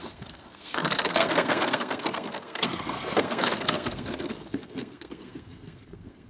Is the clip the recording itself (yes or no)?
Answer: no